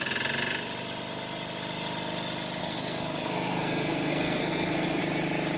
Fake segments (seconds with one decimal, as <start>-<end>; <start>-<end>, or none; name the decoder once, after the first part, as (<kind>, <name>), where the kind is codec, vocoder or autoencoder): 2.6-5.0 (codec, SNAC)